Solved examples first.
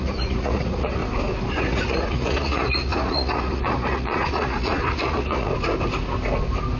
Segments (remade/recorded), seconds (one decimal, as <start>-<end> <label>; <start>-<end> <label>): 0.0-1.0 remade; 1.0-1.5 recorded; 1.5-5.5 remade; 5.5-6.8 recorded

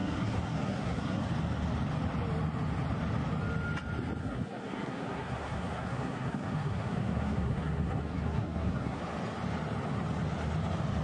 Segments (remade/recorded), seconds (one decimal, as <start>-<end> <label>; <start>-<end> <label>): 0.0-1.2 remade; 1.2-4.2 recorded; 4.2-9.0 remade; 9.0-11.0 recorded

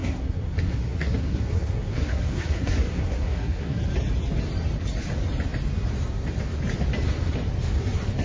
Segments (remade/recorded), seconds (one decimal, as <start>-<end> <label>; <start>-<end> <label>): 0.0-3.8 remade; 3.8-8.2 recorded

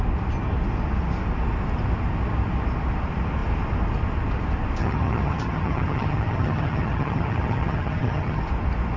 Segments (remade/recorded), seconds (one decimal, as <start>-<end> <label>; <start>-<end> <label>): 0.0-4.8 recorded; 4.8-8.4 remade; 8.4-9.0 recorded

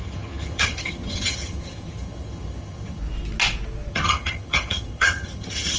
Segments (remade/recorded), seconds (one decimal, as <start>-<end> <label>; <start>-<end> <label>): 0.0-3.0 remade; 3.0-3.9 recorded; 3.9-5.8 remade

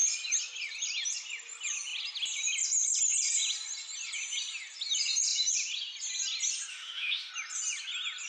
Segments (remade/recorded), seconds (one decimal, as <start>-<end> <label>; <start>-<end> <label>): 0.0-6.7 recorded; 6.7-7.3 remade; 7.3-8.3 recorded

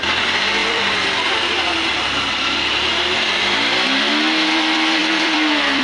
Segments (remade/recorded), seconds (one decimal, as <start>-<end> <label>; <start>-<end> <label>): 0.0-5.8 remade